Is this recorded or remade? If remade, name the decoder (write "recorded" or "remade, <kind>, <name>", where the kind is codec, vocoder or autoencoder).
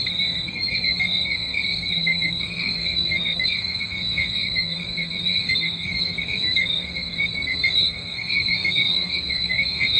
remade, codec, SNAC